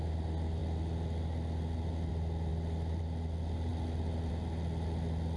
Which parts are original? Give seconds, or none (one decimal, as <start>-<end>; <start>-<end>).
0.0-5.4

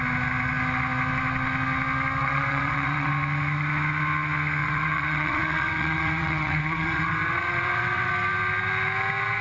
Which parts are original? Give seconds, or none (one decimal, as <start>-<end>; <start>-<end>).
0.0-2.2; 3.1-4.6; 8.1-9.4